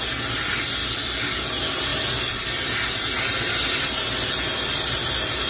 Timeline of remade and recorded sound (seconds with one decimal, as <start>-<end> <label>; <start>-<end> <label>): 0.0-5.5 recorded